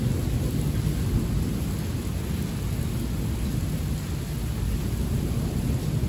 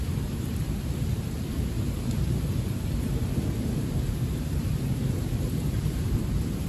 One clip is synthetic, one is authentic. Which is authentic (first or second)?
first